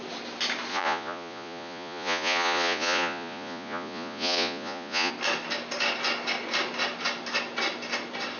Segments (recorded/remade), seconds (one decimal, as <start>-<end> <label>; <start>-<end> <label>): 0.0-0.7 recorded; 0.7-5.1 remade; 5.1-8.4 recorded